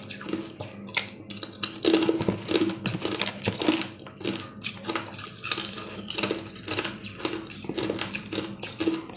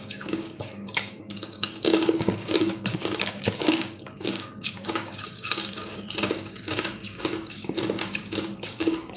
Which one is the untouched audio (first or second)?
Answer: first